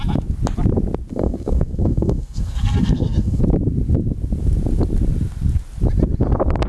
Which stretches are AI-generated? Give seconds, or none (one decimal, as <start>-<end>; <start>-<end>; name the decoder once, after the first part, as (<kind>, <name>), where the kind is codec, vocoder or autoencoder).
1.1-3.4 (codec, SNAC)